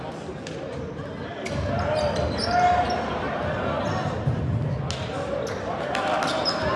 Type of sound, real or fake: real